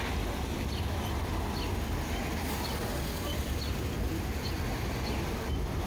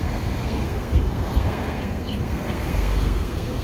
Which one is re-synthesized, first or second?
second